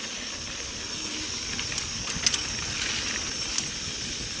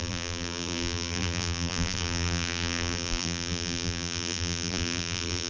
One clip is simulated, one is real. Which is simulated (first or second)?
second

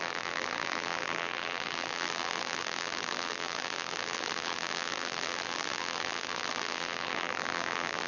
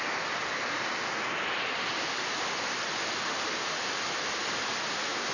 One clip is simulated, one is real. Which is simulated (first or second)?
first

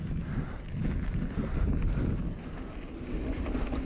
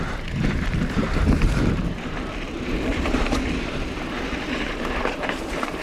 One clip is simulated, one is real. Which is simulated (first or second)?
second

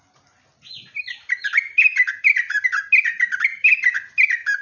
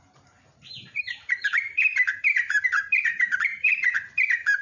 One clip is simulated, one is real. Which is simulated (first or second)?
second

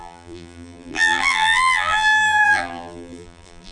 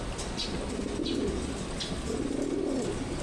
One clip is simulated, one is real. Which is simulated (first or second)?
first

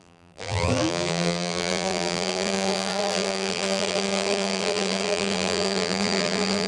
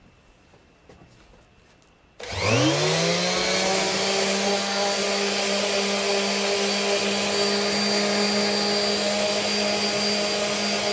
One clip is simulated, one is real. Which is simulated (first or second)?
first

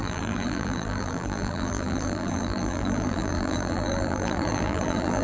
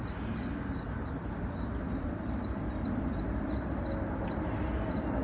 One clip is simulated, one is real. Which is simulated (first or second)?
first